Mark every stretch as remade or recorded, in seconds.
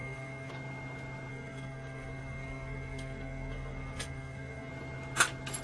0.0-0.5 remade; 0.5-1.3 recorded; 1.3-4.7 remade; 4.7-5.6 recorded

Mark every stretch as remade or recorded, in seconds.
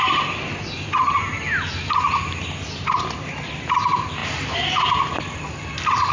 0.0-6.1 recorded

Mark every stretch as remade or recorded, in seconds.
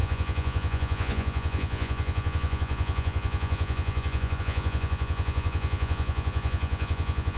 0.0-7.4 remade